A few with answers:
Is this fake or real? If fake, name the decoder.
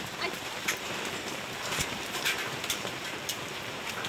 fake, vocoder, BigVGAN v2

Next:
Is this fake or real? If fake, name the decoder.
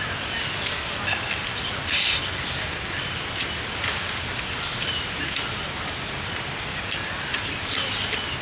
real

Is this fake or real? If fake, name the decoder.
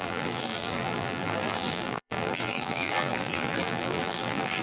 fake, vocoder, BigVGAN v2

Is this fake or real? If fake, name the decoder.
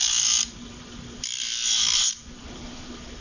fake, vocoder, BigVGAN v2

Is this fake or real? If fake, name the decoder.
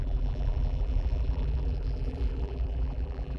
fake, vocoder, BigVGAN v2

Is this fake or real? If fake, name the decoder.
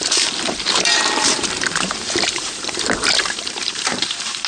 fake, vocoder, BigVGAN v2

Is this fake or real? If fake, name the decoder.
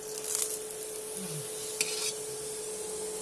real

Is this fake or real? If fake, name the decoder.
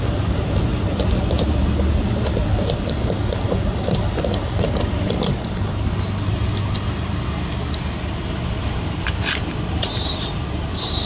real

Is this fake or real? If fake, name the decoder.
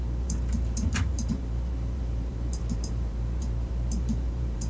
fake, vocoder, BigVGAN v2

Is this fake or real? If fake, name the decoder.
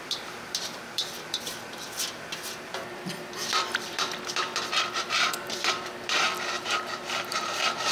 fake, vocoder, BigVGAN v2